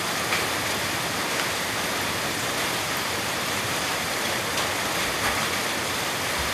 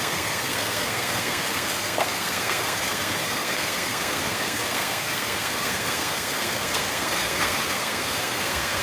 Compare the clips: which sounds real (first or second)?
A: first